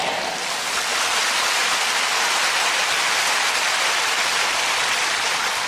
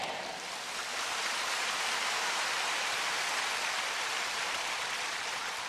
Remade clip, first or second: second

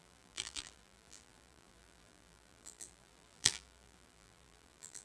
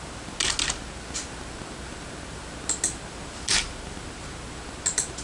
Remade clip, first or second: first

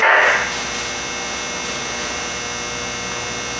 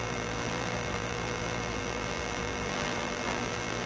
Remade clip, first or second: second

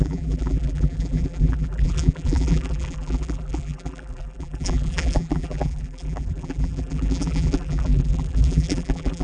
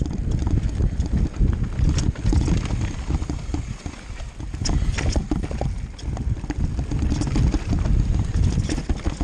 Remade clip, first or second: first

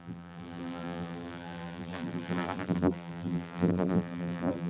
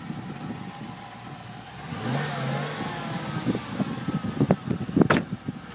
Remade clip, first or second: first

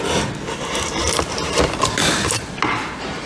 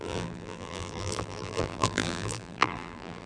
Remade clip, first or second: second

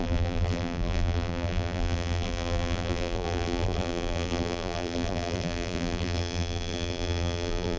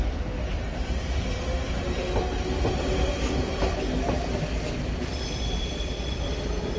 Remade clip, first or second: first